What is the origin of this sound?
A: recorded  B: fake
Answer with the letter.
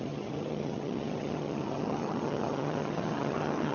B